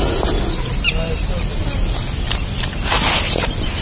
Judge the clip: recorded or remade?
recorded